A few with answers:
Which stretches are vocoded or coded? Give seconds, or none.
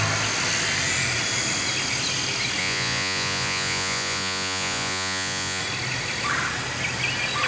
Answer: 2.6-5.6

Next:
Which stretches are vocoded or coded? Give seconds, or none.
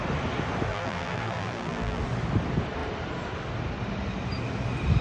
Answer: 0.7-2.0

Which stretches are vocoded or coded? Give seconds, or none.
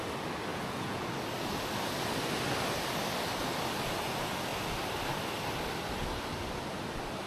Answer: 0.5-1.0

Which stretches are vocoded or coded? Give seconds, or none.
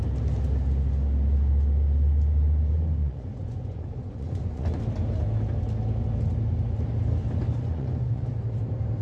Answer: 3.0-4.8; 7.6-8.3